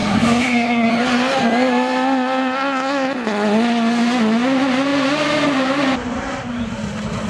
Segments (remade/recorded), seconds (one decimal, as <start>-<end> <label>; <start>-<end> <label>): 0.0-0.9 remade; 0.9-7.3 recorded